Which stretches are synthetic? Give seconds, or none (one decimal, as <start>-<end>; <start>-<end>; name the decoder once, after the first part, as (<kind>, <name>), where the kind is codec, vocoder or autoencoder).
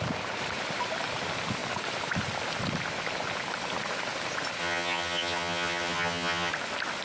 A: 4.6-6.5 (vocoder, HiFi-GAN)